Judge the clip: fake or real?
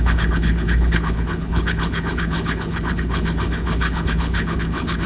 fake